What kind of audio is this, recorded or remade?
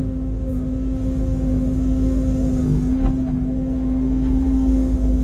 remade